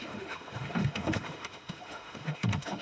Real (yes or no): no